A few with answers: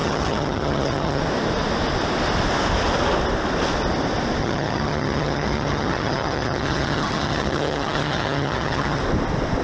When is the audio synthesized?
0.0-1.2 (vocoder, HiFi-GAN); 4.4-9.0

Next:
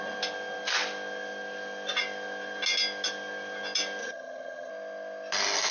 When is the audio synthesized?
4.0-4.7 (vocoder, HiFi-GAN)

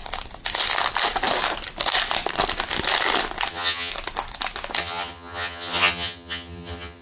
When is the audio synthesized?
3.5-3.9 (vocoder, HiFi-GAN); 4.8-7.0

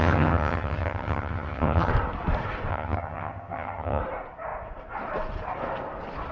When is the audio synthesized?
0.0-1.9 (vocoder, HiFi-GAN); 2.7-4.0

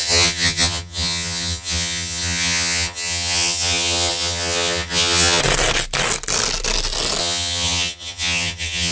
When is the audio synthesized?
0.0-5.4 (vocoder, HiFi-GAN); 7.2-8.9

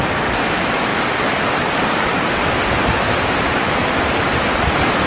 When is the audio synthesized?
none

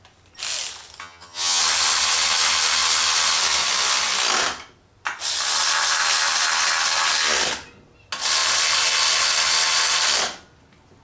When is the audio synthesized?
1.0-1.6 (vocoder, HiFi-GAN)